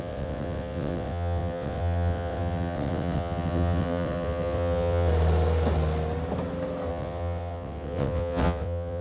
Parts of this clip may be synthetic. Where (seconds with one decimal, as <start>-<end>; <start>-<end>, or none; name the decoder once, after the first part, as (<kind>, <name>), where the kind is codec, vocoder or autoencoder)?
0.0-5.1 (vocoder, WaveNeXt); 6.9-9.0